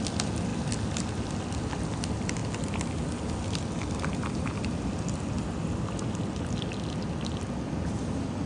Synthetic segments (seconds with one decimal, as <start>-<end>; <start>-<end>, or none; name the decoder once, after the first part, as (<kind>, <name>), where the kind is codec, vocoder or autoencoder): none